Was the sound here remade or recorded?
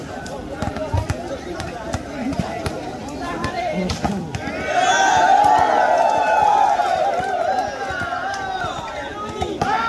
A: recorded